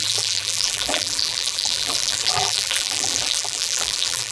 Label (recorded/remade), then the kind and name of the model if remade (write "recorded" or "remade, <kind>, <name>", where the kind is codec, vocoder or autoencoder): remade, vocoder, BigVGAN v2